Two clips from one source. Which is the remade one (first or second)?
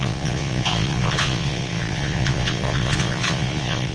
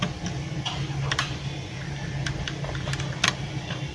first